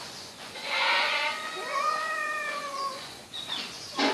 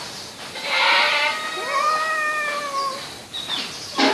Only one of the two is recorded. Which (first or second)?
second